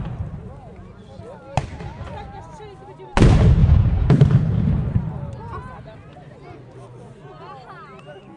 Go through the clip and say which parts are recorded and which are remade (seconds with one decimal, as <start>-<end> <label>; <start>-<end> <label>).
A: 0.0-3.6 recorded; 3.6-4.2 remade; 4.2-8.4 recorded